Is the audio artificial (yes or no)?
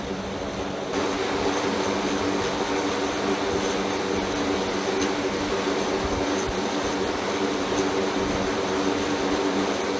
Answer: no